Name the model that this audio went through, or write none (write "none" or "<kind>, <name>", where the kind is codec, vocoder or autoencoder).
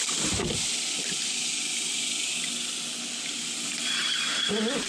none